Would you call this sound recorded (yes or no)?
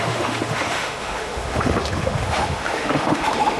no